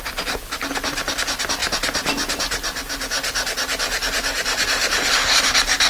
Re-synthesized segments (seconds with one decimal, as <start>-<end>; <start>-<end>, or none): none